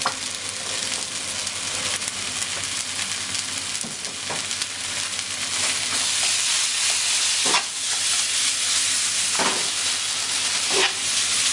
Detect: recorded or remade recorded